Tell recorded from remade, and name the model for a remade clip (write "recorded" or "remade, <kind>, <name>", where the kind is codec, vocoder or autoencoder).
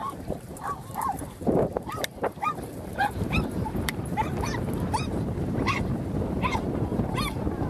remade, vocoder, BigVGAN v2